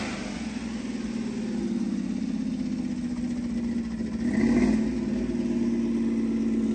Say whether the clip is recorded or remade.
recorded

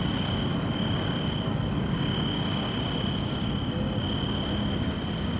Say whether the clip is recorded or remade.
recorded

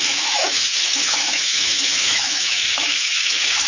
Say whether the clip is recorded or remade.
remade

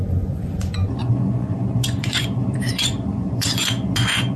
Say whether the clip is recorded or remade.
remade